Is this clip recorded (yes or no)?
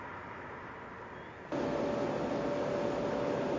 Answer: yes